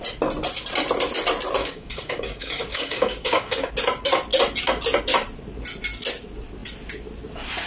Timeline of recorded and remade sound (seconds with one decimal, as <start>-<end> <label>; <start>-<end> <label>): 0.0-1.6 recorded; 1.6-3.7 remade; 3.7-7.7 recorded